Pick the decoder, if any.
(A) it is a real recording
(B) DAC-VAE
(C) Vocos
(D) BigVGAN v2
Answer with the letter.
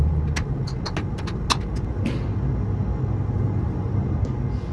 A